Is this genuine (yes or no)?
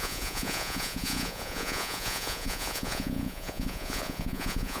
no